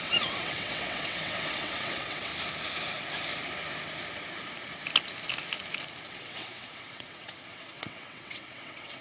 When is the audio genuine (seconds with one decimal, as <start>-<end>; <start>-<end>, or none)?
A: 2.3-6.1